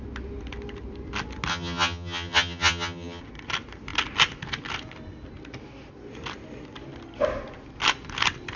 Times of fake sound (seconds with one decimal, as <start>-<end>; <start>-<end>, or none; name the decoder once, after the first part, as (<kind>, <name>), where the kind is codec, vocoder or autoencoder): 1.5-3.2 (vocoder, HiFi-GAN)